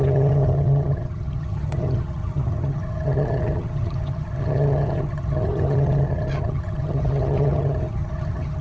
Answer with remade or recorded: remade